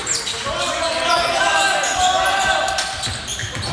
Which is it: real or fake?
real